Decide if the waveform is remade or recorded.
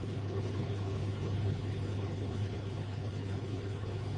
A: remade